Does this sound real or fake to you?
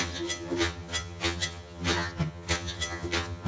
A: fake